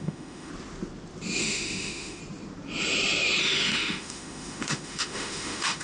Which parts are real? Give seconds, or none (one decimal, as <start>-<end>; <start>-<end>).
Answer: 0.5-1.4; 2.2-3.4